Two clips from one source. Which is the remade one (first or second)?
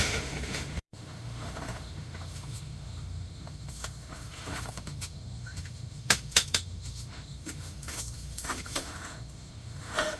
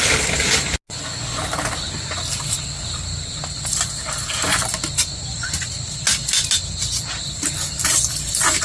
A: first